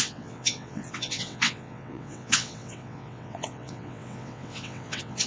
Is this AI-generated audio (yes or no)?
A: yes